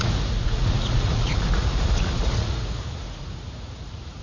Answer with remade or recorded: remade